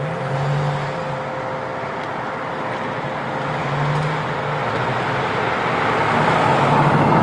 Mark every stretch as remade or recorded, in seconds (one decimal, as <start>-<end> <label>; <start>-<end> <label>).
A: 0.0-1.7 recorded; 1.7-3.1 remade; 3.1-4.6 recorded; 4.6-5.9 remade; 5.9-6.5 recorded; 6.5-7.2 remade

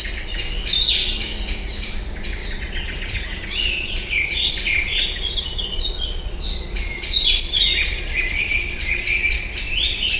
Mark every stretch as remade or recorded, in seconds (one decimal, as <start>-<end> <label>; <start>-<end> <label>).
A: 0.0-2.4 recorded; 2.4-4.5 remade; 4.5-4.9 recorded; 4.9-9.0 remade; 9.0-10.2 recorded